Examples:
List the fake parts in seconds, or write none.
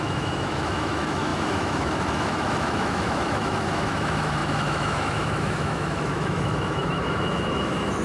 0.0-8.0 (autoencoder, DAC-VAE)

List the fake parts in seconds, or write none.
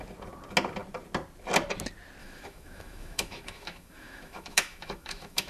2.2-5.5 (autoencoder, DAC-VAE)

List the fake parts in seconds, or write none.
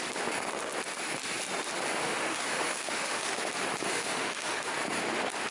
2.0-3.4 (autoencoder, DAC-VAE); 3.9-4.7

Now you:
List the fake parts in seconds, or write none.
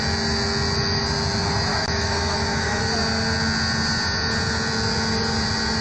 1.7-2.8 (autoencoder, DAC-VAE)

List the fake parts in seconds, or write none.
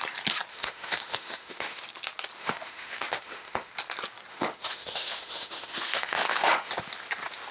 0.5-1.8 (autoencoder, DAC-VAE); 2.4-3.7; 4.3-6.7